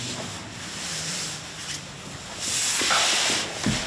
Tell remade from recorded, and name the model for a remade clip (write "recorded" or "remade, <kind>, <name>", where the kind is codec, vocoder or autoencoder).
recorded